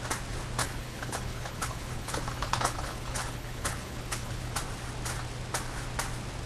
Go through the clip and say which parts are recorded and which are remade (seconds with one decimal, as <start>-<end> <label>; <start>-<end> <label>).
0.0-0.6 recorded; 0.6-4.5 remade; 4.5-6.5 recorded